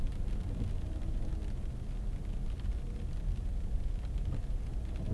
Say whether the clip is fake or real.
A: real